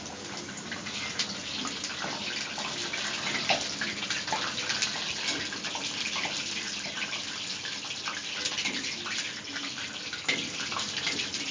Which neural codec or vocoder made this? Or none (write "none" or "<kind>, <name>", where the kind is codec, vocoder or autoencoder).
none